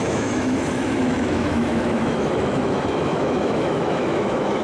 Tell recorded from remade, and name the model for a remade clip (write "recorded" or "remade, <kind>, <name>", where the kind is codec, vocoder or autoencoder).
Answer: remade, autoencoder, DAC-VAE